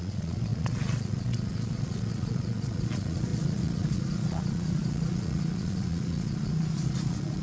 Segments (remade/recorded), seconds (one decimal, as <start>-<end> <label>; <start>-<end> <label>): 0.0-7.4 remade